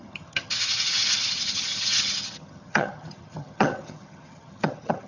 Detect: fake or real fake